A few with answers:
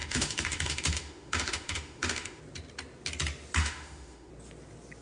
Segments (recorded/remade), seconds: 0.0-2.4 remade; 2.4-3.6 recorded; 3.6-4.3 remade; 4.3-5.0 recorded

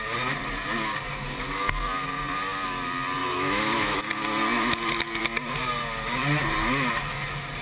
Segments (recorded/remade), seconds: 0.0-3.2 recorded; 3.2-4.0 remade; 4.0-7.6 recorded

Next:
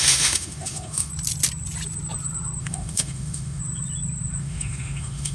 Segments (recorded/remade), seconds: 0.0-1.1 remade; 1.1-2.6 recorded; 2.6-3.6 remade; 3.6-4.4 recorded; 4.4-5.3 remade

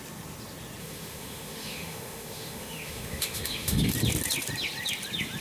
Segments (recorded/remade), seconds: 0.0-0.8 recorded; 0.8-3.9 remade; 3.9-5.4 recorded